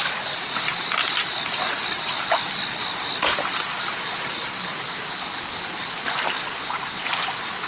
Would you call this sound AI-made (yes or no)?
no